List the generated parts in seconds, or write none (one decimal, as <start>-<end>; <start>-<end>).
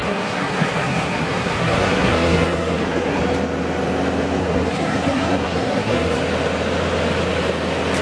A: 0.0-3.2; 4.4-6.2